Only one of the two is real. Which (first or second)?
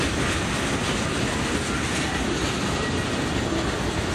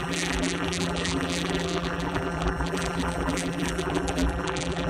first